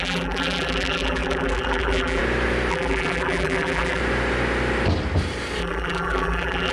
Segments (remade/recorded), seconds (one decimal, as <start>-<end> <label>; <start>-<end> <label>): 0.0-2.2 remade; 2.2-2.7 recorded; 2.7-4.0 remade; 4.0-5.6 recorded; 5.6-6.7 remade

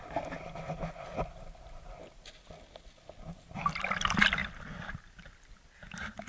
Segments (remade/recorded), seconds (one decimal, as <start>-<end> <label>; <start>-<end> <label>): 0.0-6.3 recorded

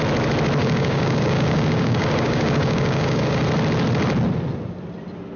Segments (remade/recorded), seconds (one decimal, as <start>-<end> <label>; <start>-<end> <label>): 0.0-0.6 recorded; 0.6-3.4 remade; 3.4-5.4 recorded

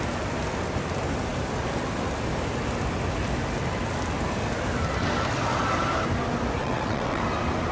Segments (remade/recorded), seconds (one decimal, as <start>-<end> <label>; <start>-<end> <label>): 0.0-6.6 recorded; 6.6-7.2 remade; 7.2-7.7 recorded

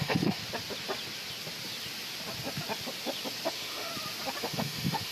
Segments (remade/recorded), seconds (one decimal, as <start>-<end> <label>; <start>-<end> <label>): 0.0-0.4 remade; 0.4-3.5 recorded; 3.5-3.9 remade; 3.9-4.4 recorded; 4.4-5.1 remade

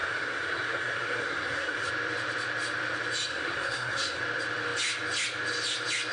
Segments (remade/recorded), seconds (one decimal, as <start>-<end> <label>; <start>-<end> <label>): 0.0-1.9 remade; 1.9-3.3 recorded; 3.3-4.2 remade; 4.2-6.1 recorded

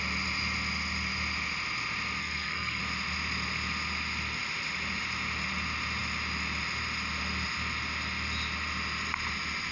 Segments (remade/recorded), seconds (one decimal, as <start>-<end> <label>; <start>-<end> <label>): 0.0-2.2 recorded; 2.2-2.8 remade; 2.8-9.7 recorded